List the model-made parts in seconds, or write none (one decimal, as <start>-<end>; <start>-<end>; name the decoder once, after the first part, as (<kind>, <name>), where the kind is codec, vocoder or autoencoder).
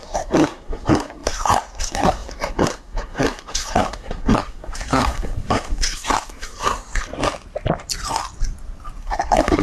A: 0.0-7.1 (codec, SNAC); 9.0-9.6